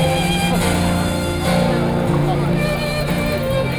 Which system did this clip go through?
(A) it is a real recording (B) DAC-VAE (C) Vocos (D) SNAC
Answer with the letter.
A